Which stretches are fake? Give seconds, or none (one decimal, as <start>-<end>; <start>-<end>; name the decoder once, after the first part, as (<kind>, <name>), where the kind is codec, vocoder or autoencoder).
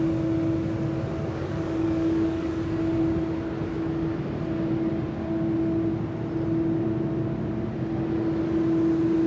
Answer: 1.2-2.6 (codec, DAC)